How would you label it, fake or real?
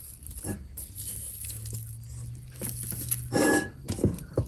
real